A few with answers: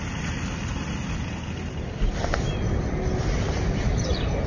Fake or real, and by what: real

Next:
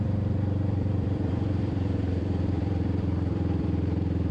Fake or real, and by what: fake, vocoder, BigVGAN v2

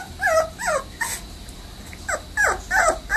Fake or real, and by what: real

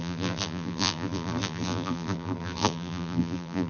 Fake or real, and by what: fake, vocoder, BigVGAN v2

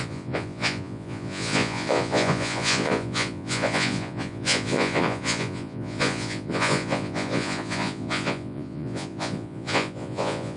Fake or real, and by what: fake, vocoder, Vocos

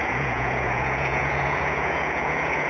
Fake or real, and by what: fake, vocoder, Vocos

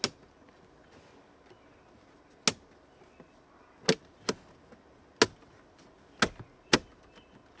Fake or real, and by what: real